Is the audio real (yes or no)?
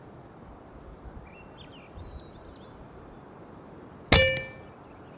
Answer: yes